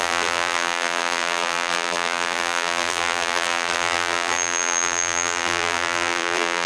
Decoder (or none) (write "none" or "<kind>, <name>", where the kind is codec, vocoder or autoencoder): vocoder, BigVGAN v2